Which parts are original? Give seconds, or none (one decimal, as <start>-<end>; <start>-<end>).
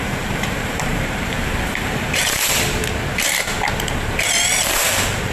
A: 2.8-4.7